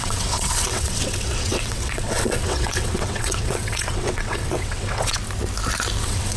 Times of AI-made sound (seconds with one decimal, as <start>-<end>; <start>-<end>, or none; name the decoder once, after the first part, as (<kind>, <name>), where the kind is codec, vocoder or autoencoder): 0.0-5.2 (vocoder, WaveNeXt); 6.0-6.4